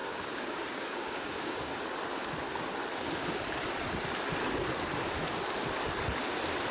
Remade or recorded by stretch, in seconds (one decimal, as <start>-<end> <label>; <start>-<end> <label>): 0.0-1.7 remade; 1.7-6.7 recorded